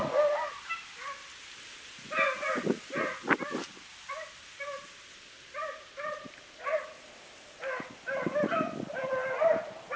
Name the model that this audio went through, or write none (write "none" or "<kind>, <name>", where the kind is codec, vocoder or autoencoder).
none